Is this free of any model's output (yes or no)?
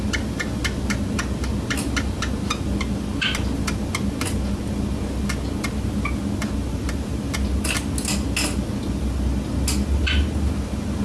yes